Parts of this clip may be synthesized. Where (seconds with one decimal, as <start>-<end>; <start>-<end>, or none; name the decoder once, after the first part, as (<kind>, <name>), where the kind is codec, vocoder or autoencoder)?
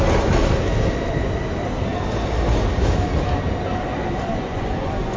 4.3-5.2 (vocoder, Vocos)